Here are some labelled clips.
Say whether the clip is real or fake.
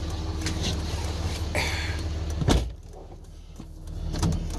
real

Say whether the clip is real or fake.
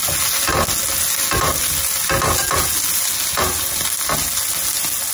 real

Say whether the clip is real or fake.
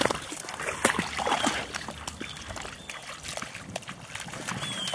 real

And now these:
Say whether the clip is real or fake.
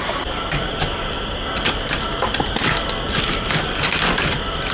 real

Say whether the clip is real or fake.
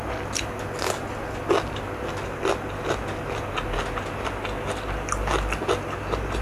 real